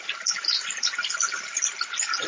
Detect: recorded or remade recorded